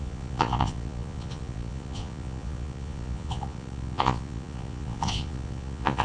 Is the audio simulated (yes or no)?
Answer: yes